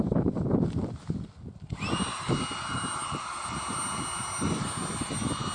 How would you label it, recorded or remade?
recorded